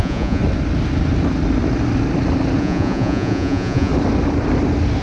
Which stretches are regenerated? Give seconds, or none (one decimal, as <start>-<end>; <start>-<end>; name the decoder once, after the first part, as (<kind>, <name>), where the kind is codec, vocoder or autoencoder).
0.0-0.4 (vocoder, Vocos); 2.6-3.9

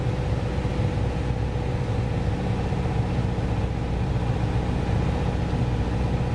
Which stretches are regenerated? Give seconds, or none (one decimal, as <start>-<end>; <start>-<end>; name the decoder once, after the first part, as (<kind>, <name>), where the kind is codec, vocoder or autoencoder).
none

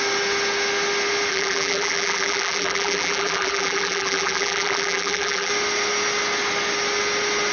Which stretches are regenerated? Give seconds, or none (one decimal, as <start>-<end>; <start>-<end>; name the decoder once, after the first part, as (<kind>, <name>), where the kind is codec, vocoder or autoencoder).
1.3-5.5 (vocoder, BigVGAN v2)

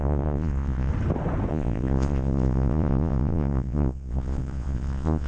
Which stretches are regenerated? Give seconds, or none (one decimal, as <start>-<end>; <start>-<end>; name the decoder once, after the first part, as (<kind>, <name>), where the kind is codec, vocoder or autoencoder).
0.0-0.9 (vocoder, Vocos); 1.5-5.3

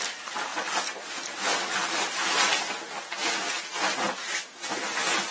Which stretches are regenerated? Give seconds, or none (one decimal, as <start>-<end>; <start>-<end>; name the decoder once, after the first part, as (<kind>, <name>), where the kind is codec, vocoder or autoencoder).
none

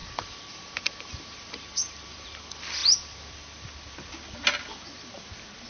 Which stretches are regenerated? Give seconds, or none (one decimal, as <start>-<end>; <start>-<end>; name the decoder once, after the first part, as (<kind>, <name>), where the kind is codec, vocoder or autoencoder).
0.0-2.4 (vocoder, BigVGAN v2)